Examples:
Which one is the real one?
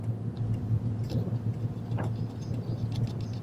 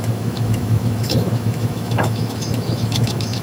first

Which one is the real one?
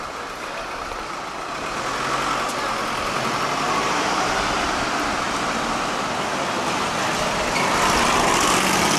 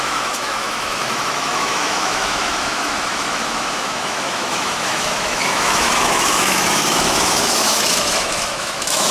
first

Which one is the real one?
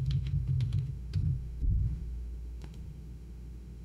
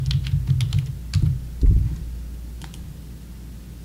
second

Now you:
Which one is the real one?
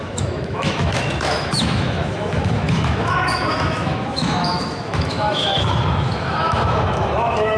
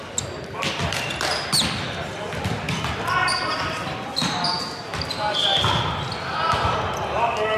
second